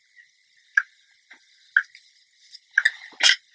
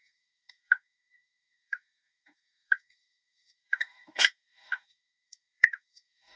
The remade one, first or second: second